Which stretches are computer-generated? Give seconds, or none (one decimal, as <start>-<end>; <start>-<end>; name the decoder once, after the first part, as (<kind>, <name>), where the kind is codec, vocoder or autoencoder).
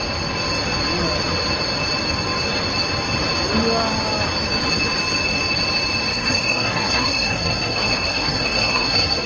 6.1-9.3 (codec, SNAC)